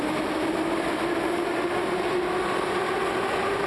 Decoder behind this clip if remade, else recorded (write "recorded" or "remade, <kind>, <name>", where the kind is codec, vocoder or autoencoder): recorded